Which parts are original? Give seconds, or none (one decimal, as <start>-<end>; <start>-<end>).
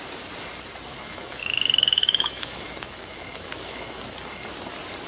0.0-0.9; 4.0-5.1